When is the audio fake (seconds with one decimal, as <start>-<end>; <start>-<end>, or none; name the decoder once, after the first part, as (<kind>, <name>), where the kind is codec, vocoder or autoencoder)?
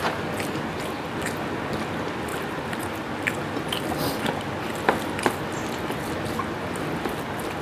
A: 2.3-2.9 (vocoder, BigVGAN v2)